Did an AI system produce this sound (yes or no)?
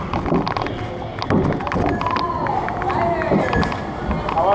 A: no